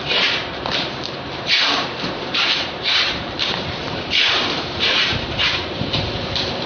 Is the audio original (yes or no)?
no